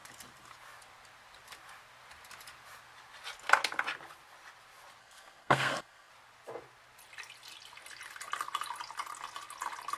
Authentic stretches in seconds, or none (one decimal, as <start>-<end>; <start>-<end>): 0.0-5.0; 6.1-10.0